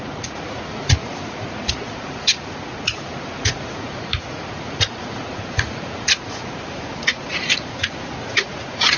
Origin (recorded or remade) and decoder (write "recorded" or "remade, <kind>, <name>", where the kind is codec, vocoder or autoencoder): remade, vocoder, Vocos